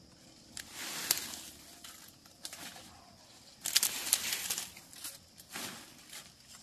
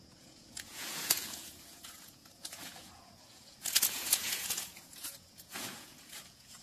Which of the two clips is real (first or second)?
first